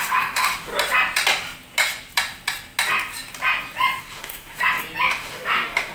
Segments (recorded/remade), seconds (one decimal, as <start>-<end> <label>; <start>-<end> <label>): 0.0-0.7 remade; 0.7-4.0 recorded; 4.0-4.6 remade; 4.6-5.1 recorded; 5.1-5.9 remade